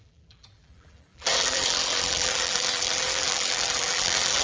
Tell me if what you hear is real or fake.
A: fake